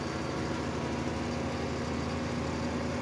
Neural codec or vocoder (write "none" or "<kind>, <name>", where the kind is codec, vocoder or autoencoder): none